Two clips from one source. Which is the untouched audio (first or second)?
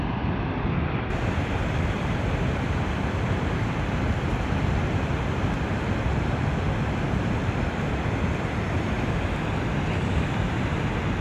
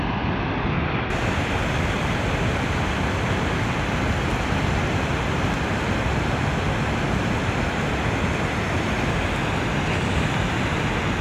second